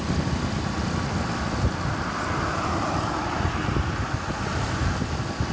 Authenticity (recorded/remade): recorded